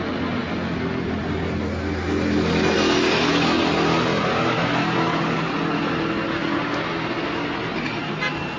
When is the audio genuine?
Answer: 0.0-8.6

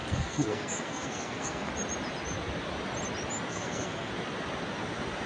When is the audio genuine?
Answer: 1.7-3.5; 4.1-5.3

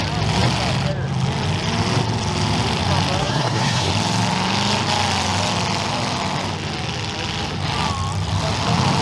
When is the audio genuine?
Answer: 0.0-3.2; 3.9-9.0

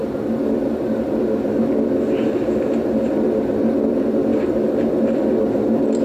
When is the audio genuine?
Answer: 0.0-6.0

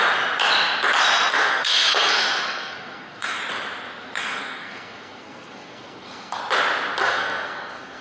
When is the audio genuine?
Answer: 0.0-1.3; 3.4-4.2; 6.4-7.0

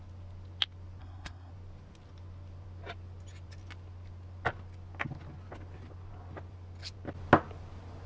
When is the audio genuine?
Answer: 0.0-1.0; 1.5-8.1

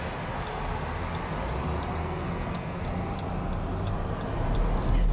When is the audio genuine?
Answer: 0.0-2.0; 2.8-5.1